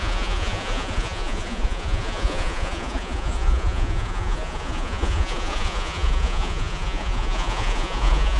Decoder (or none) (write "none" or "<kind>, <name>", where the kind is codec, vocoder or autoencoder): vocoder, Vocos